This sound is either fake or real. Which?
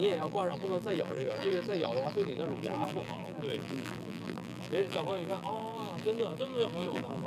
fake